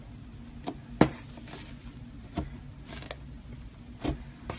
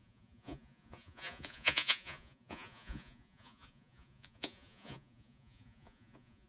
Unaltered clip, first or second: first